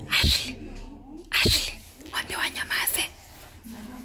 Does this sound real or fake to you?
real